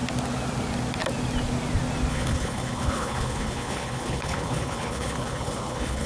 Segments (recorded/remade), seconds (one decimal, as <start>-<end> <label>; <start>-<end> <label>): 0.0-2.1 recorded; 2.1-6.1 remade

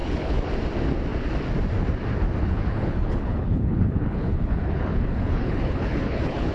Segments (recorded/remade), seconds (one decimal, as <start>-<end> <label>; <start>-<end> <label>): 0.0-0.5 remade; 0.5-2.4 recorded; 2.4-6.5 remade

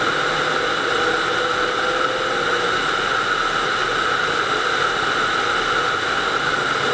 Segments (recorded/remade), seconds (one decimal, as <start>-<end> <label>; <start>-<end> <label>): 0.0-6.9 recorded

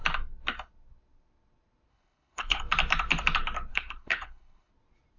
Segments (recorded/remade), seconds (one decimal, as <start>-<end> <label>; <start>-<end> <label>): 0.0-1.9 recorded; 1.9-2.6 remade; 2.6-3.7 recorded; 3.7-4.7 remade; 4.7-5.2 recorded

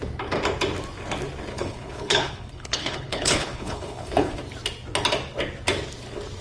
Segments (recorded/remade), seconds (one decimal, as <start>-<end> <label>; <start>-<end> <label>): 0.0-1.5 recorded; 1.5-4.4 remade; 4.4-6.4 recorded

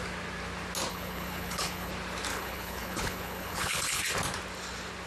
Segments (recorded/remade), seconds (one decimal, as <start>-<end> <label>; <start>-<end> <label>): 0.0-0.9 recorded; 0.9-1.9 remade; 1.9-2.3 recorded; 2.3-4.0 remade; 4.0-5.1 recorded

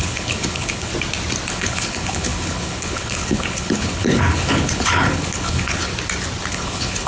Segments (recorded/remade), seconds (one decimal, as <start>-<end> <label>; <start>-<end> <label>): 0.0-0.9 remade; 0.9-1.5 recorded; 1.5-5.9 remade; 5.9-6.5 recorded; 6.5-7.1 remade